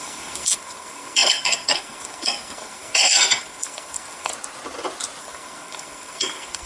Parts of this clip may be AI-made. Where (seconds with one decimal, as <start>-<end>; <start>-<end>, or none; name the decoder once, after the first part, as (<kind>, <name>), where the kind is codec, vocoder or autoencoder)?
0.0-4.3 (codec, SNAC); 5.2-6.7